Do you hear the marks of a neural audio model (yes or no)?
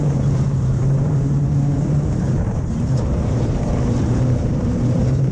yes